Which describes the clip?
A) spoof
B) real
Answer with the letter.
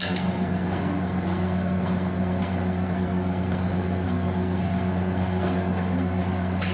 A